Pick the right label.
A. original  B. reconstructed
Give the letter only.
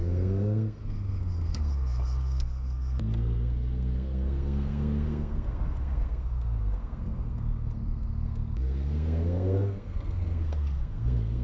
B